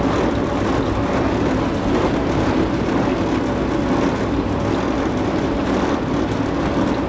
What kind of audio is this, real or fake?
real